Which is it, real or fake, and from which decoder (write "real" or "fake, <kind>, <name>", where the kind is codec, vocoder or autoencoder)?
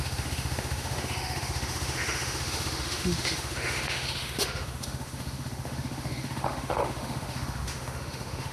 fake, autoencoder, DAC-VAE